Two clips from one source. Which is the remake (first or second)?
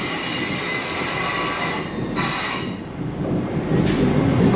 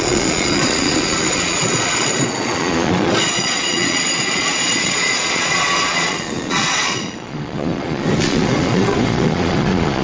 second